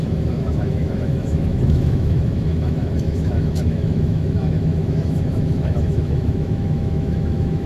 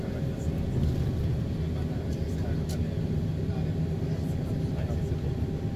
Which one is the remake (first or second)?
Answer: first